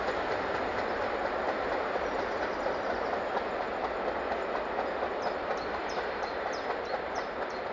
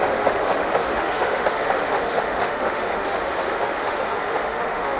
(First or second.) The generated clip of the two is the second